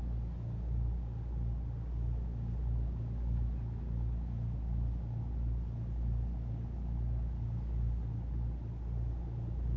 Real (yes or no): yes